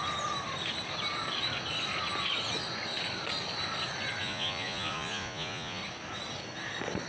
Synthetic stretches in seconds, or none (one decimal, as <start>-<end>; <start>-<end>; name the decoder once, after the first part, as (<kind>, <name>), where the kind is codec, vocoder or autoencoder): 4.2-5.8 (vocoder, Vocos)